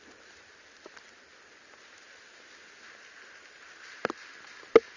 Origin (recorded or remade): recorded